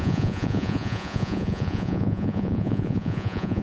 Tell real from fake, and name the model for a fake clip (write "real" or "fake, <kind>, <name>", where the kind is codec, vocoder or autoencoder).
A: fake, vocoder, Vocos